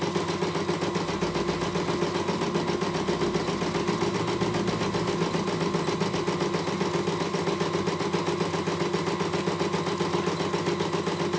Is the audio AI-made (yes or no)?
no